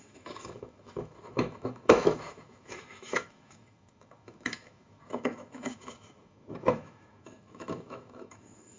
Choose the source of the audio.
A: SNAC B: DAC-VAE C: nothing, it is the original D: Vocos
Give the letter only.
B